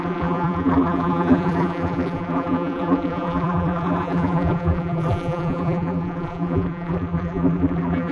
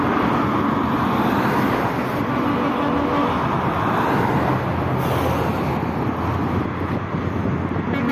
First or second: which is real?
second